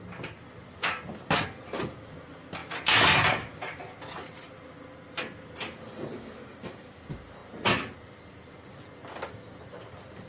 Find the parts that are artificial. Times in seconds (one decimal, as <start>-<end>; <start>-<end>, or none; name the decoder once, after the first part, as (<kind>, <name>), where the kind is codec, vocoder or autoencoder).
none